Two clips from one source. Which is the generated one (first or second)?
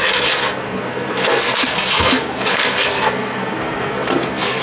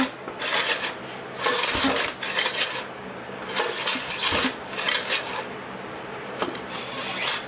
first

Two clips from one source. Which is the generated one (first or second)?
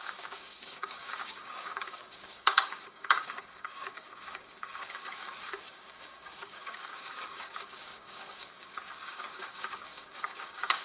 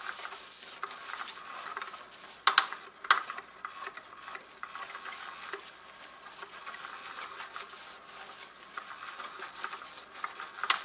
first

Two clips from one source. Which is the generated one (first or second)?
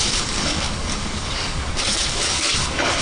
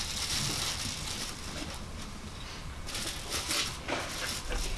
first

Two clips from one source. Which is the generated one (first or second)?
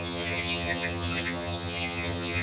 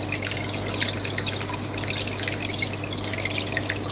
first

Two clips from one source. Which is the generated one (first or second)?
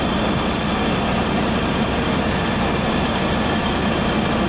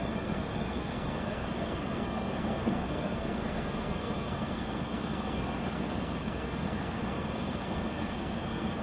second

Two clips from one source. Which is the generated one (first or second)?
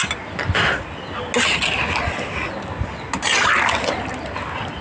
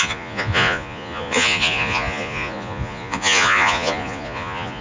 second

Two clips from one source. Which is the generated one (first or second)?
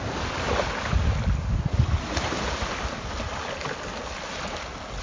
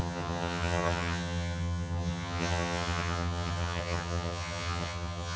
second